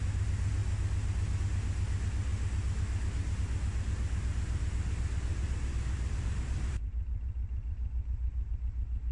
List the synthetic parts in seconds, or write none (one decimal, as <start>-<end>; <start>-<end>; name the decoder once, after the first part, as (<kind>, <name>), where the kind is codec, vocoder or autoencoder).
5.3-8.5 (vocoder, BigVGAN v2)